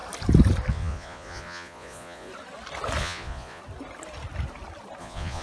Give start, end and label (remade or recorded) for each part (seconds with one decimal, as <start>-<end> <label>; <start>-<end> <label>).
0.0-0.7 recorded; 0.7-2.3 remade; 2.3-3.0 recorded; 3.0-3.6 remade; 3.6-5.0 recorded; 5.0-5.4 remade